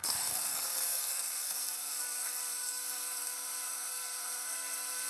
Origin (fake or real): fake